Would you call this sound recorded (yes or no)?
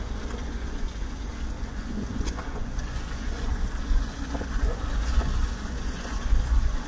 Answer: no